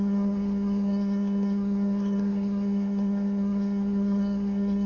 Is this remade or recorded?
remade